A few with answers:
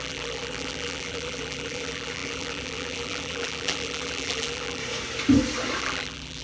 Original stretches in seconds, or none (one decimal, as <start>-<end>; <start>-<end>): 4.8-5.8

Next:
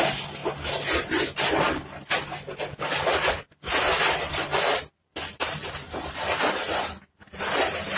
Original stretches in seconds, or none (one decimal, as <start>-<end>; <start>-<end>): 0.0-4.5; 6.6-8.0

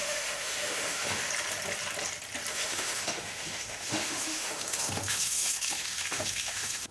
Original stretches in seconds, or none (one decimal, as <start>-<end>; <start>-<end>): 1.3-2.5

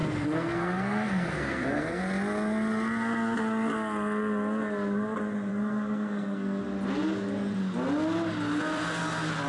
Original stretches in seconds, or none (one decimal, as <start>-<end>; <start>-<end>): 2.0-5.5; 6.6-9.5

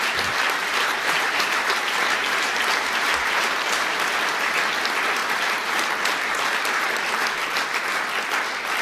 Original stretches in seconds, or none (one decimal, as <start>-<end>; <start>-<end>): 0.0-0.6; 4.6-5.2; 5.9-8.8

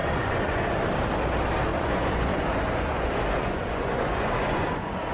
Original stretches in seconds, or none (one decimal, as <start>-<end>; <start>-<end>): 0.8-1.7